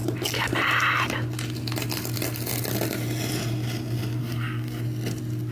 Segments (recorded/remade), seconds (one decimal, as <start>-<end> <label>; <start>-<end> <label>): 0.0-4.2 recorded; 4.2-4.8 remade; 4.8-5.5 recorded